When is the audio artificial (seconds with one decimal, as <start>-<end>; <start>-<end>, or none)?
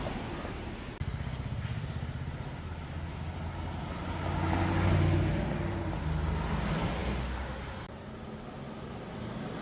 none